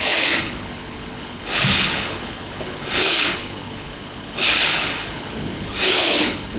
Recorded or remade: remade